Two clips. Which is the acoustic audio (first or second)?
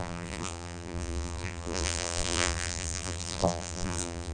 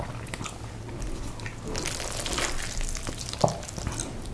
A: second